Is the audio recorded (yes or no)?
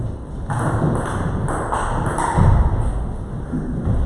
yes